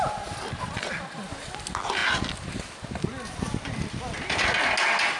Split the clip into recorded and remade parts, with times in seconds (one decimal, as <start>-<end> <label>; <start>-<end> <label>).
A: 0.0-5.2 recorded